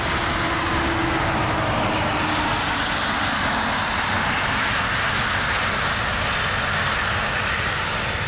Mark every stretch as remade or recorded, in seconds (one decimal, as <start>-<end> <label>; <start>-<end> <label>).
0.0-8.3 recorded